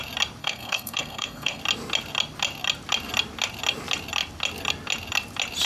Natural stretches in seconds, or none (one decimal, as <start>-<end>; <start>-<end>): 0.0-0.4; 1.6-5.7